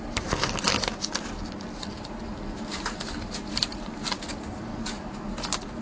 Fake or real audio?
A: real